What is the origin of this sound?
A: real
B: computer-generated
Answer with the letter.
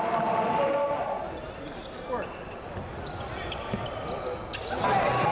A